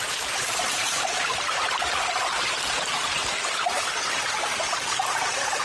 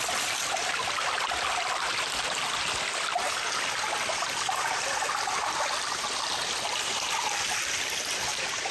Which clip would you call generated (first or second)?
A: first